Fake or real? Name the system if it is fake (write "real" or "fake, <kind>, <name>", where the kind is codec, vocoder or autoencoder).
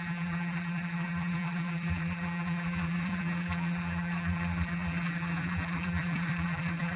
fake, vocoder, BigVGAN v2